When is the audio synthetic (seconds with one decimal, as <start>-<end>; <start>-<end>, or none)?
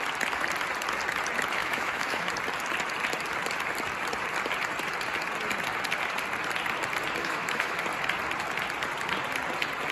1.6-2.3; 7.2-7.8